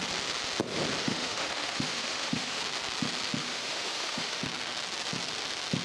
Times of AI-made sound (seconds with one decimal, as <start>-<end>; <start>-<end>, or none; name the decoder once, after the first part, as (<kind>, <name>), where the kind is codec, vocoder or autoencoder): 1.0-2.6 (autoencoder, DAC-VAE); 3.4-4.4